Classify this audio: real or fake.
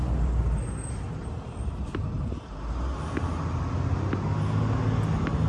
real